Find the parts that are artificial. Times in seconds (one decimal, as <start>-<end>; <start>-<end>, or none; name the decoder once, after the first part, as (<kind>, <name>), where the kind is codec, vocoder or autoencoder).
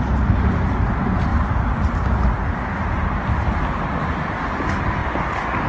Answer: none